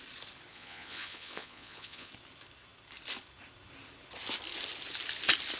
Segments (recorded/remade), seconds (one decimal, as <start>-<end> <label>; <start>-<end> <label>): 0.0-0.5 recorded; 0.5-2.1 remade; 2.1-5.6 recorded